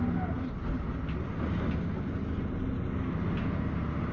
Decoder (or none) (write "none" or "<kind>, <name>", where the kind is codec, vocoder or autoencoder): none